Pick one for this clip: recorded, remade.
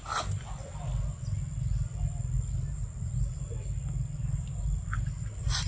recorded